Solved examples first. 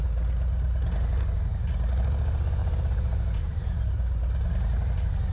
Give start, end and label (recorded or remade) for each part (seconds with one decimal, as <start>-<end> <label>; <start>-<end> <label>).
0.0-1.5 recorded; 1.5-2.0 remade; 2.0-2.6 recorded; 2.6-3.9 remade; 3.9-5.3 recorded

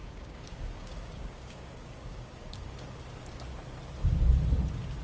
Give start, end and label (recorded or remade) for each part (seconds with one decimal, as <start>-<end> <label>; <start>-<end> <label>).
0.0-3.0 remade; 3.0-5.0 recorded

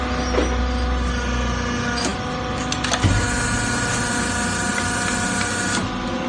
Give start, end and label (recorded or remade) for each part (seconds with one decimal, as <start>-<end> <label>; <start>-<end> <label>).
0.0-6.3 recorded

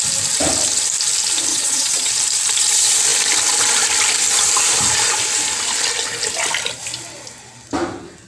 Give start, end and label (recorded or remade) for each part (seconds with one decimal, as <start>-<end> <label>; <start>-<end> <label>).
0.0-1.5 recorded; 1.5-2.1 remade; 2.1-8.3 recorded

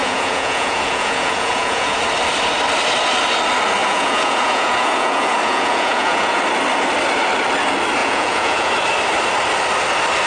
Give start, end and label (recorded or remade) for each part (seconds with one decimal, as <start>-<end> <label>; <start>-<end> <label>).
0.0-2.0 remade; 2.0-3.8 recorded; 3.8-6.4 remade; 6.4-8.0 recorded; 8.0-8.7 remade; 8.7-10.3 recorded

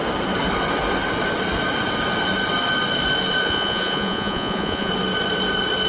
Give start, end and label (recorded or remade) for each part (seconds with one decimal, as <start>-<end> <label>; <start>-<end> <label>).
0.0-3.4 recorded; 3.4-4.9 remade; 4.9-5.9 recorded

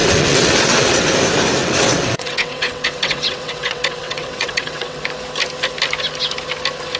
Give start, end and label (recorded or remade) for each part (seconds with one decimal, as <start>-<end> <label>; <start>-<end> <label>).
0.0-1.1 remade; 1.1-1.6 recorded; 1.6-5.0 remade; 5.0-7.0 recorded

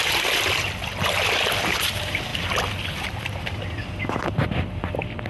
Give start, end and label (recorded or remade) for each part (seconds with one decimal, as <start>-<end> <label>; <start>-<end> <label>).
0.0-5.3 recorded